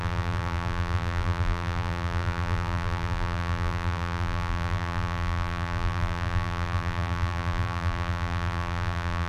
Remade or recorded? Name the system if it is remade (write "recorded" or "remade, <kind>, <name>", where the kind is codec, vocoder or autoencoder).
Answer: remade, vocoder, BigVGAN v2